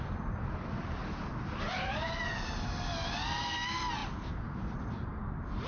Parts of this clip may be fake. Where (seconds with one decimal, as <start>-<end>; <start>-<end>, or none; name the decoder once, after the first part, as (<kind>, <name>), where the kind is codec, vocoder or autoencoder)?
none